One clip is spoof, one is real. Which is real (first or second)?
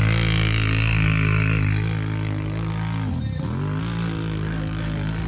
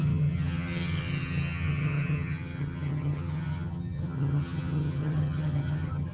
first